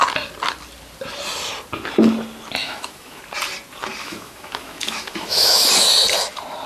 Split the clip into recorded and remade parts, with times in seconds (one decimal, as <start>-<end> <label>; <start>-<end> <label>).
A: 0.0-2.6 recorded; 2.6-3.2 remade; 3.2-4.0 recorded; 4.0-5.7 remade; 5.7-6.7 recorded